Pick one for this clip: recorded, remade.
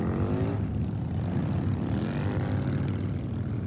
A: recorded